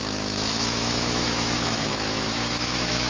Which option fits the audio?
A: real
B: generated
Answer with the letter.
B